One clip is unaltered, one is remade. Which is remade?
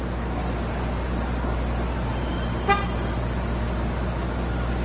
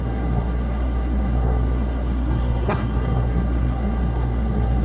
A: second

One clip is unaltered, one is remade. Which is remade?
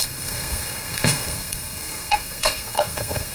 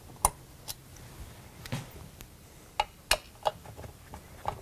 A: first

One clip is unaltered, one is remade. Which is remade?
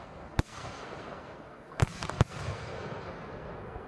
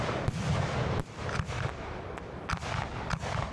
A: first